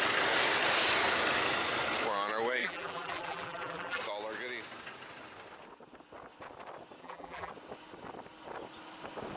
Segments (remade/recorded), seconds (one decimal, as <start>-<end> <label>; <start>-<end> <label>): 0.0-2.6 recorded; 2.6-4.0 remade; 4.0-7.0 recorded; 7.0-7.5 remade; 7.5-9.4 recorded